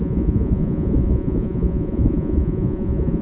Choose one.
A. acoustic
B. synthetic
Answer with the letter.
B